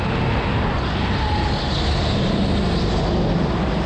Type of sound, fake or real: real